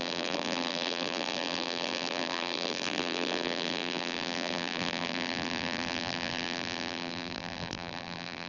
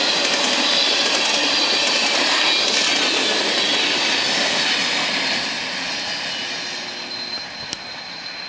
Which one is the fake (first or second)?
first